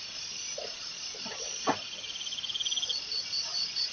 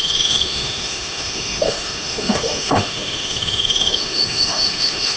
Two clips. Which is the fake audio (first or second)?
second